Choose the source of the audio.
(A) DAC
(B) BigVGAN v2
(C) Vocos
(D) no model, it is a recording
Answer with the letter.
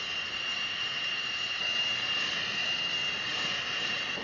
D